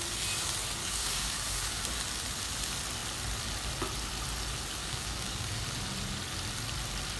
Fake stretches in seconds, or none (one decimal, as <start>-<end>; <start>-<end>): 0.8-1.8; 4.8-5.6